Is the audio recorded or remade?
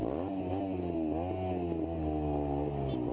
recorded